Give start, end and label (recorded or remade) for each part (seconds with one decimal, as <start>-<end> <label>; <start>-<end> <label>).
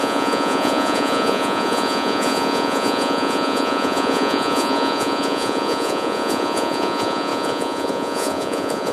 0.0-8.9 remade